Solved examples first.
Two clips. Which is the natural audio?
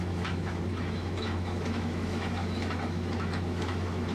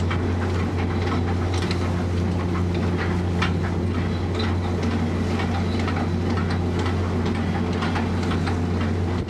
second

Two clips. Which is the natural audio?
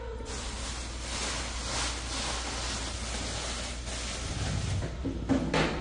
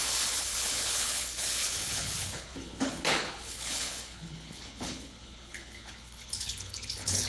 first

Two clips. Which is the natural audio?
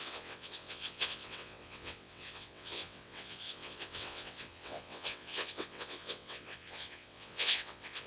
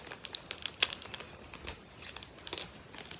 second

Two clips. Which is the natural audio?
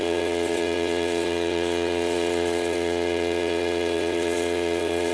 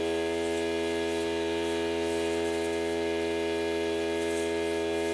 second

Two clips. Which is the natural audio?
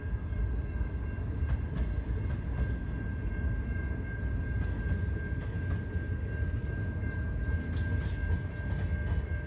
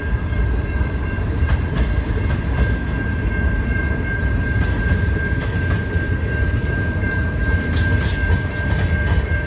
first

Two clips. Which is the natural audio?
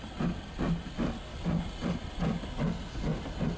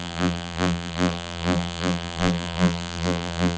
first